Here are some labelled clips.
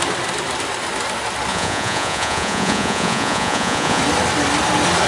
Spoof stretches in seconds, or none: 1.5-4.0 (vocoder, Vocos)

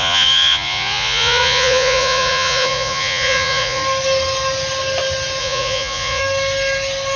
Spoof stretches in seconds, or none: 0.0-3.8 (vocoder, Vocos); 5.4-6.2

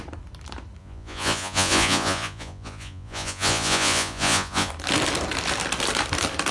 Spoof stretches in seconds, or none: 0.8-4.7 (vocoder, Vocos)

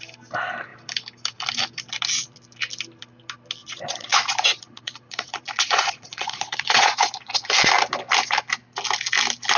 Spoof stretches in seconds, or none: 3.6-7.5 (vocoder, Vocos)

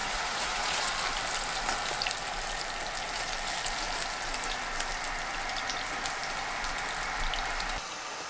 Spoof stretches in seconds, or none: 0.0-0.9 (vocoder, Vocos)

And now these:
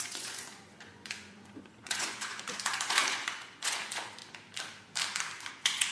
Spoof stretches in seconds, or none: 0.0-4.2 (vocoder, Vocos); 5.5-5.9

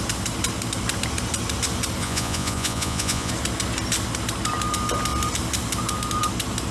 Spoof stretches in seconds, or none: 2.0-3.3 (vocoder, Vocos)

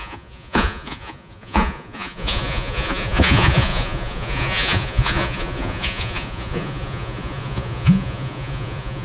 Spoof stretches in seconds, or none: 0.0-9.0 (vocoder, Vocos)